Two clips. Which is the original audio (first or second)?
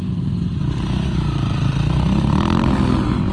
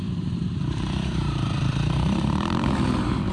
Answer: first